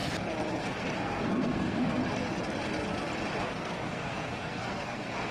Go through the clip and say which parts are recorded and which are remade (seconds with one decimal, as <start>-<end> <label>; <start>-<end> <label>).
0.0-0.5 recorded; 0.5-2.0 remade; 2.0-3.4 recorded; 3.4-5.3 remade